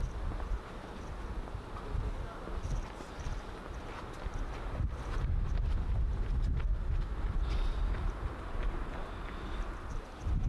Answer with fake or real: real